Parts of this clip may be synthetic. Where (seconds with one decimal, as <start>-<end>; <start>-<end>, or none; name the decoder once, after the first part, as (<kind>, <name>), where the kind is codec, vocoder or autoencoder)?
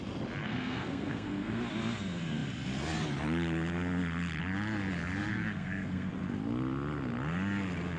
0.4-1.6 (codec, SNAC); 5.3-6.1